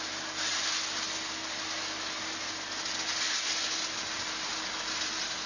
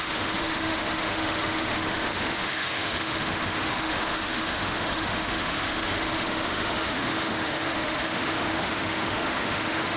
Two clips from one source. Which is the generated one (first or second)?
second